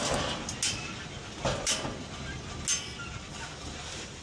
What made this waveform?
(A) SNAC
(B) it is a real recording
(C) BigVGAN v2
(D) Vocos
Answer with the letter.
B